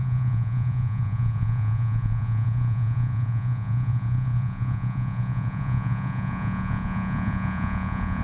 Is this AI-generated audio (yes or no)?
yes